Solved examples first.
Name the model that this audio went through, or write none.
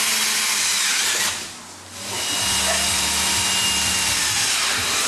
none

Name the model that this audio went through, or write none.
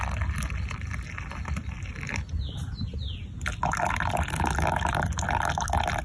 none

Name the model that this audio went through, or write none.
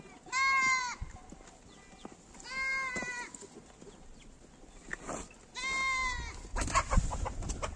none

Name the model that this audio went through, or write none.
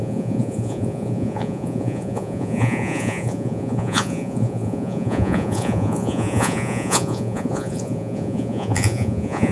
vocoder, Vocos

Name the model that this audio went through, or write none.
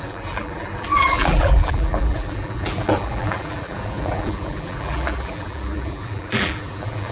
vocoder, BigVGAN v2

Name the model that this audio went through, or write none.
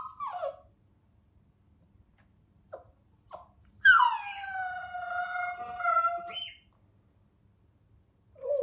none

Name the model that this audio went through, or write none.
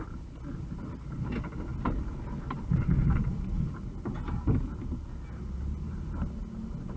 none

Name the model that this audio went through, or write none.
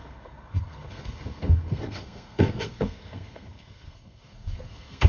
codec, SNAC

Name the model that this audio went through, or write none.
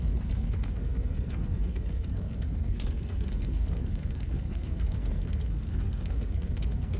codec, SNAC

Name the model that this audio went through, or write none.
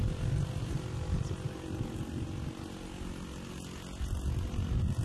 none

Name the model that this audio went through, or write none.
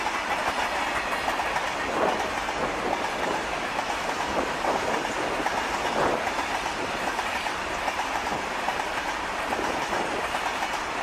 vocoder, BigVGAN v2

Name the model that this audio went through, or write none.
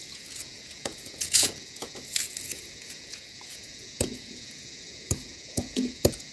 vocoder, Vocos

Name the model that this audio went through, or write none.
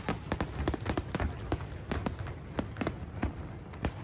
none